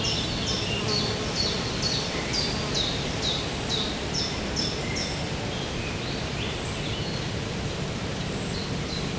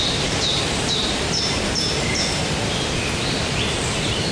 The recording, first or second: first